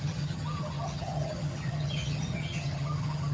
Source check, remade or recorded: remade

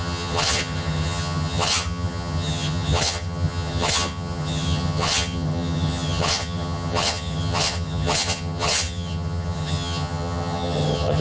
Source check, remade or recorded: remade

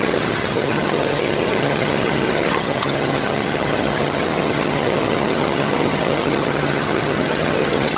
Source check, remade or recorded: remade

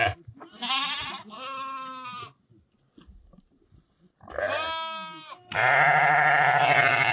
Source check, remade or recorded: recorded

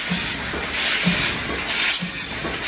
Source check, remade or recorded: recorded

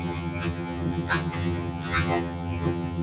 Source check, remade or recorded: remade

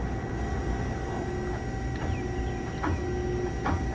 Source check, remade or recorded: recorded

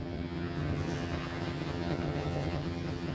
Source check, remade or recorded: remade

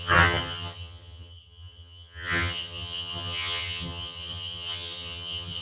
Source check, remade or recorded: remade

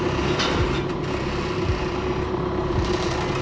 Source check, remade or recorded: recorded